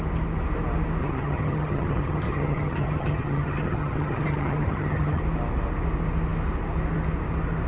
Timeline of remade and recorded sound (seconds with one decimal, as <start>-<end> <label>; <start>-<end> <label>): 0.0-1.0 recorded; 1.0-5.2 remade; 5.2-7.7 recorded